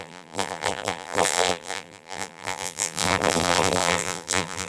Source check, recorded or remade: remade